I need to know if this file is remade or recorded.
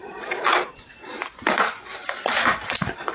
remade